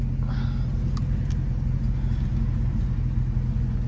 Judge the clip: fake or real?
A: real